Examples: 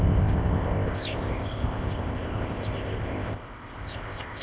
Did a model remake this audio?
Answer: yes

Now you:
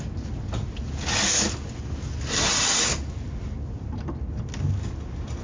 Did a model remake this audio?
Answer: no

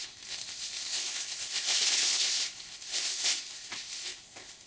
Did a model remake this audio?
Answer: yes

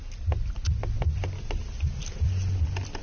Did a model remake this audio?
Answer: no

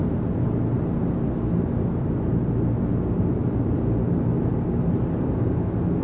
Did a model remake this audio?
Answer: no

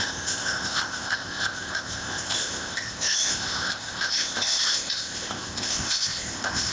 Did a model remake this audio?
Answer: yes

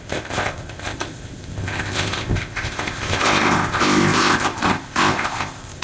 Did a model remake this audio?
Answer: yes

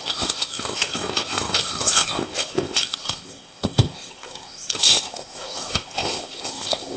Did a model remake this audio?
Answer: yes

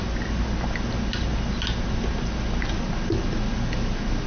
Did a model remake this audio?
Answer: no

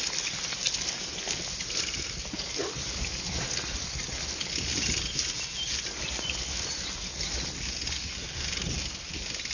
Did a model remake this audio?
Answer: no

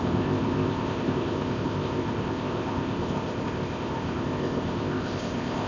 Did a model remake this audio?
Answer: yes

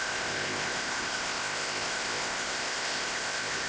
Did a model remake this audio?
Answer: yes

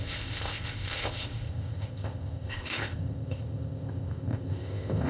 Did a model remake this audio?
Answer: yes